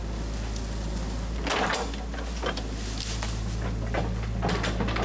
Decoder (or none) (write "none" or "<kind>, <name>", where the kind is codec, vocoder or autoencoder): none